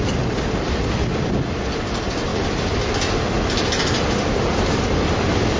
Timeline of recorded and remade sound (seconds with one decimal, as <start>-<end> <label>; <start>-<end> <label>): 0.0-5.6 recorded